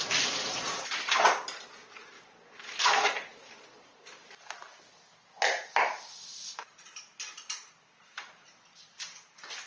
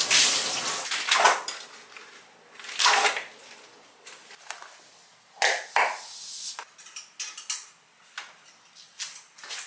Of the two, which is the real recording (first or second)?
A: second